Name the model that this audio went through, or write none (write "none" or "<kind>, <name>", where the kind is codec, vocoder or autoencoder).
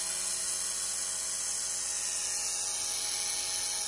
none